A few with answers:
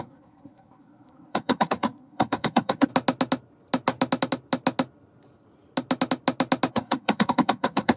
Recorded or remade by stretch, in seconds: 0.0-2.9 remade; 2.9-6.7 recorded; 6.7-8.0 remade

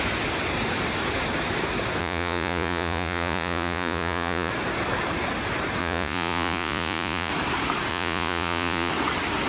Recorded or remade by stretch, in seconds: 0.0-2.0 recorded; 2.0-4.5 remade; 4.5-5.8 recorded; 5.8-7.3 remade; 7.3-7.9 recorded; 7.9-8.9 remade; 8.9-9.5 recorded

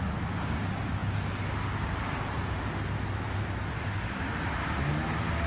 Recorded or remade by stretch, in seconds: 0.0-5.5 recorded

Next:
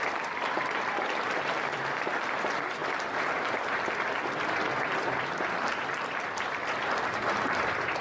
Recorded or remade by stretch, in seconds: 0.0-8.0 remade

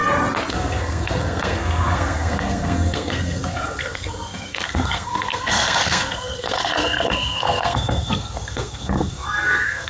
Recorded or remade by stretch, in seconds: 0.0-0.5 recorded; 0.5-9.9 remade

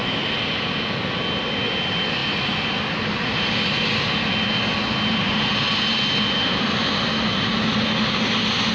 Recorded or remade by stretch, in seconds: 0.0-8.7 recorded

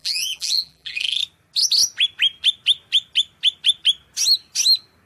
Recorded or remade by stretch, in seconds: 0.0-1.2 remade; 1.2-5.1 recorded

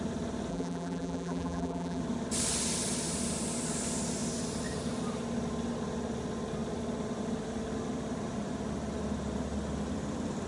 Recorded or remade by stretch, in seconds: 0.0-0.5 recorded; 0.5-2.0 remade; 2.0-10.5 recorded